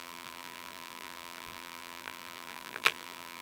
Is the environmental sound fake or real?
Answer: fake